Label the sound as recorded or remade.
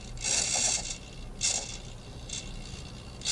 recorded